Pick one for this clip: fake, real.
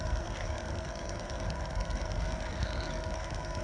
fake